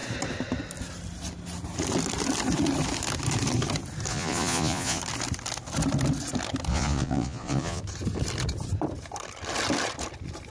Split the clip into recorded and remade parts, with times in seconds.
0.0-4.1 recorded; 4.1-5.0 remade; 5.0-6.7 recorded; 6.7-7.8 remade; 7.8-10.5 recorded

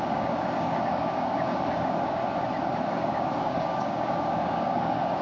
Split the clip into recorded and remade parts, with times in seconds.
0.0-2.2 remade; 2.2-2.9 recorded; 2.9-5.2 remade